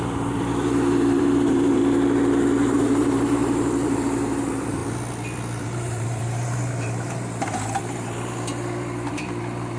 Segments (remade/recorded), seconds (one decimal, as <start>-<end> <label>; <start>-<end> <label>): 0.0-1.8 remade; 1.8-2.7 recorded; 2.7-4.8 remade; 4.8-5.6 recorded; 5.6-9.8 remade